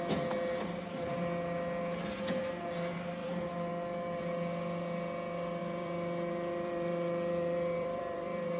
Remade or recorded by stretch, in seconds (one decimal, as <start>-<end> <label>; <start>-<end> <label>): 0.0-3.2 recorded; 3.2-3.7 remade; 3.7-5.6 recorded; 5.6-8.6 remade